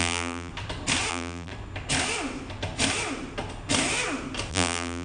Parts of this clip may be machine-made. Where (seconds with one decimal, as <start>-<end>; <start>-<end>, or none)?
0.0-0.5; 1.1-1.5; 4.5-5.0